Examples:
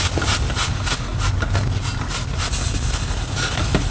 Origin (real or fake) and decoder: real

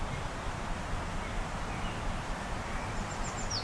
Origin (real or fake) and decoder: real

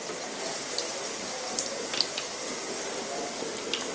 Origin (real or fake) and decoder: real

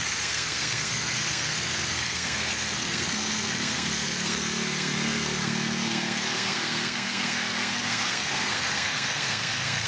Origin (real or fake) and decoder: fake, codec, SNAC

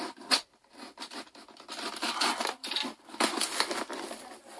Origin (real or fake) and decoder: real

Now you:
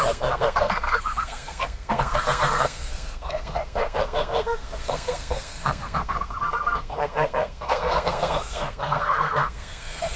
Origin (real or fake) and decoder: fake, codec, SNAC